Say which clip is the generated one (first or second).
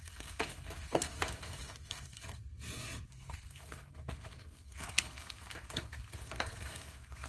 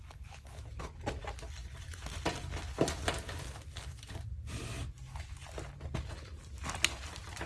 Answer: first